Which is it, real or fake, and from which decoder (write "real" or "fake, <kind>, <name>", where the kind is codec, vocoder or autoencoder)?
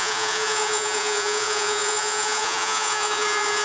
fake, vocoder, Vocos